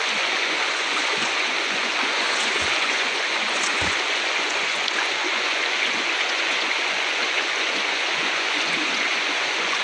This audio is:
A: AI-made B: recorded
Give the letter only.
A